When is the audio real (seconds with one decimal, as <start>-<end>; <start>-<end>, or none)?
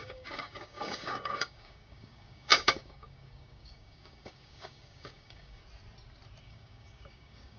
5.6-6.4